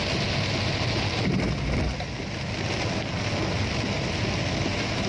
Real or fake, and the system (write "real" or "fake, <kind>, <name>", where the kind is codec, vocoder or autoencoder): real